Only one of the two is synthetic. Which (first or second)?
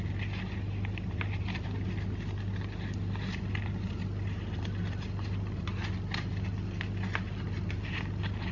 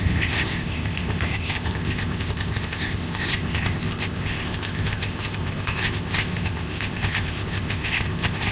second